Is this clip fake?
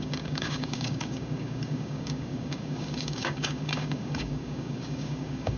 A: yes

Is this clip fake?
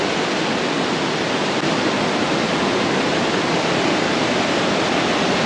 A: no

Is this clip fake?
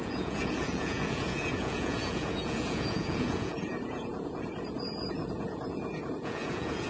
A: yes